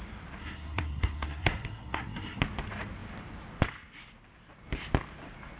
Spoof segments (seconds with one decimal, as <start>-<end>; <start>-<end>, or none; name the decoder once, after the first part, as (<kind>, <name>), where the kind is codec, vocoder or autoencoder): 0.4-2.4 (codec, SNAC)

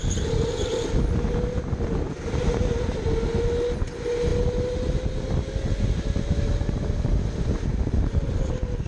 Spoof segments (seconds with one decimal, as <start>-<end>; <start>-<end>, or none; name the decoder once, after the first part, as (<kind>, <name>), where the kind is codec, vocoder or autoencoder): none

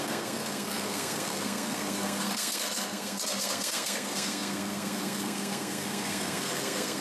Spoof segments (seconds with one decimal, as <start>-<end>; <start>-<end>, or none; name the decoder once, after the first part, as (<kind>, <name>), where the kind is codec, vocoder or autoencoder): 0.0-7.0 (codec, SNAC)

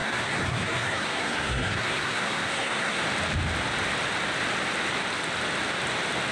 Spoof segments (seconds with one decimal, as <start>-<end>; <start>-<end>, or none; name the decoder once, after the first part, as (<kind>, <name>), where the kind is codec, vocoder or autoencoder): 0.0-3.0 (codec, SNAC)

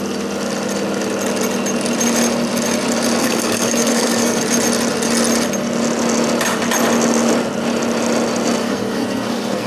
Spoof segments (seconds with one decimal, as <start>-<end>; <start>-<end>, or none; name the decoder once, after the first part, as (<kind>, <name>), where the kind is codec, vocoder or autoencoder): 3.2-4.4 (codec, SNAC); 8.6-9.7

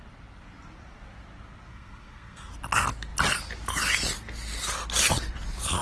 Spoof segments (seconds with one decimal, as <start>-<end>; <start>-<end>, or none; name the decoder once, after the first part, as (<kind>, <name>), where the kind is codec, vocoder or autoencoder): 1.7-2.5 (codec, SNAC)